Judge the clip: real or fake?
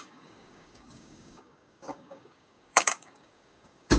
fake